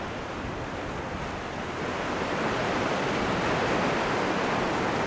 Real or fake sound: real